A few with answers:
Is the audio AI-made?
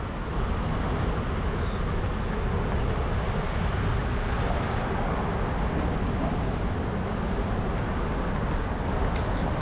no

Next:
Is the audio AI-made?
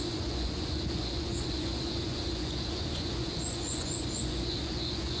yes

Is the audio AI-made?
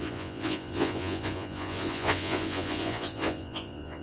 yes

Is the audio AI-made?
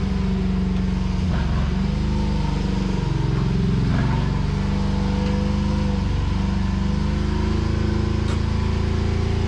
no